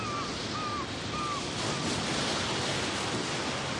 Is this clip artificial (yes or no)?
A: no